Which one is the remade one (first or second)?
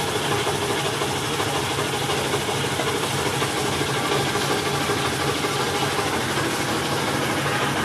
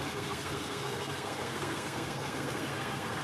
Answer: second